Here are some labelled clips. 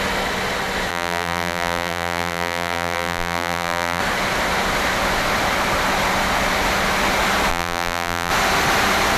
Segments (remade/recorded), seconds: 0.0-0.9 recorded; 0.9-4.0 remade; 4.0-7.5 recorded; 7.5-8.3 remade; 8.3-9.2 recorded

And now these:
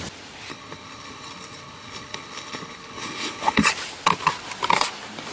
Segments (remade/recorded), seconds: 0.0-0.5 recorded; 0.5-3.7 remade; 3.7-5.3 recorded

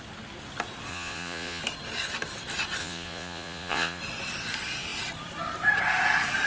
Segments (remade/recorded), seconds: 0.0-0.9 recorded; 0.9-1.6 remade; 1.6-2.8 recorded; 2.8-4.0 remade; 4.0-6.5 recorded

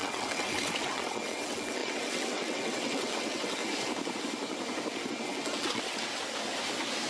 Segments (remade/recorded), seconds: 0.0-3.6 remade; 3.6-5.1 recorded; 5.1-6.1 remade; 6.1-7.1 recorded

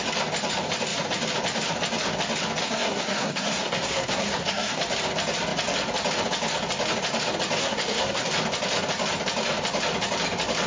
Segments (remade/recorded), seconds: 0.0-2.6 recorded; 2.6-4.8 remade; 4.8-7.6 recorded; 7.6-8.3 remade; 8.3-10.7 recorded

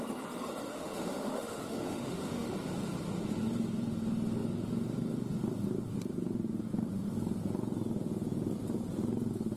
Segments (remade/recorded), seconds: 0.0-0.7 recorded; 0.7-2.5 remade; 2.5-9.6 recorded

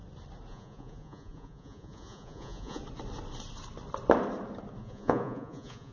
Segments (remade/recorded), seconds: 0.0-0.5 recorded; 0.5-2.8 remade; 2.8-4.8 recorded; 4.8-5.9 remade

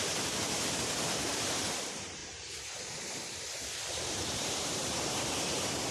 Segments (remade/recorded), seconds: 0.0-5.9 remade